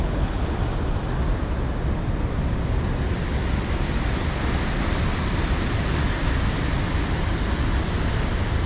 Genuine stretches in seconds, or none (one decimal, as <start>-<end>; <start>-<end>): 0.6-8.7